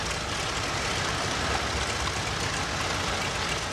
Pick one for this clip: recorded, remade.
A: recorded